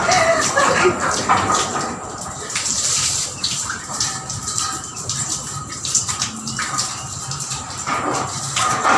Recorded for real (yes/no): no